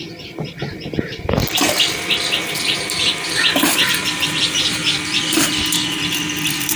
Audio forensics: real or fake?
real